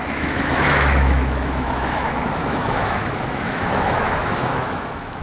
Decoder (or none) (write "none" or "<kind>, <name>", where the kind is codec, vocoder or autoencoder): autoencoder, DAC-VAE